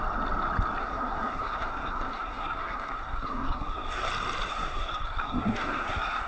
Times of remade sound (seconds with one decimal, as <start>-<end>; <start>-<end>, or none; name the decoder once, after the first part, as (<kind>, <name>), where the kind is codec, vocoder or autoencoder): 0.8-4.1 (codec, SNAC); 4.5-6.3